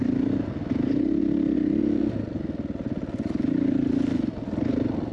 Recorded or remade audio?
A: recorded